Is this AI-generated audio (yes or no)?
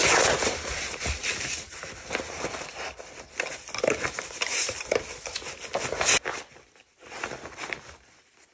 no